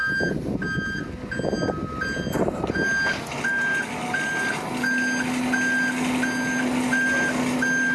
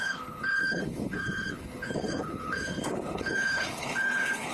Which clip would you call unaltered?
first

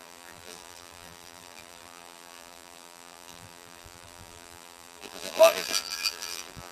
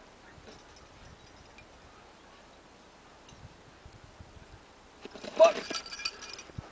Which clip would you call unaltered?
second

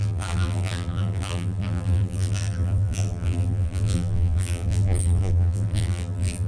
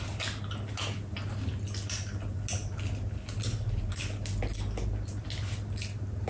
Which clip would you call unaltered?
second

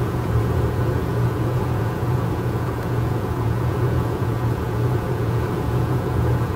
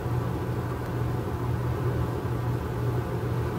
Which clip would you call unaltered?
second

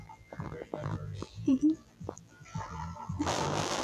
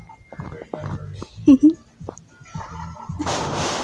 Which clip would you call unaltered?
second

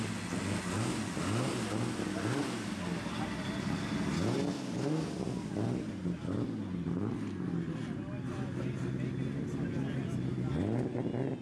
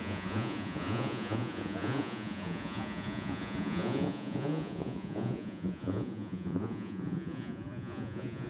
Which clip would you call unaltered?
first